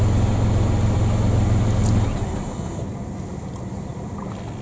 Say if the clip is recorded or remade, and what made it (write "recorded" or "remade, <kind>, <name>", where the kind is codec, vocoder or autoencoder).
recorded